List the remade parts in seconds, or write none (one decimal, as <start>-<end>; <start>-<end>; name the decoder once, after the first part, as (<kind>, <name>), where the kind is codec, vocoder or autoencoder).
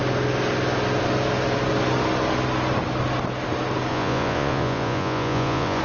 3.9-5.8 (vocoder, Vocos)